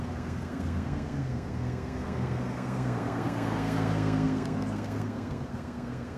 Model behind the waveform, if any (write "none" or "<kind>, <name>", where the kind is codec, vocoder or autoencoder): codec, SNAC